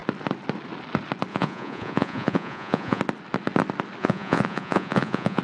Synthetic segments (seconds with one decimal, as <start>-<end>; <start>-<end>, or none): 1.3-3.0; 4.0-5.4